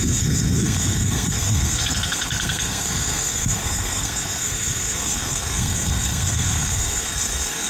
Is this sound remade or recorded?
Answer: remade